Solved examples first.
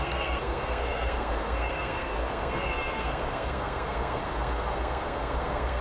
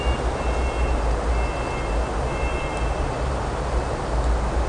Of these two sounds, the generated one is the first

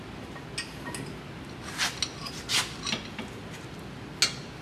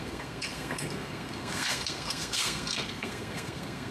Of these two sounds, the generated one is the second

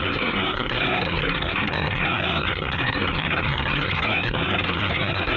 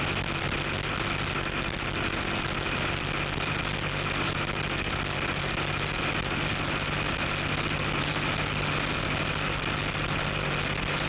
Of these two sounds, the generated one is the first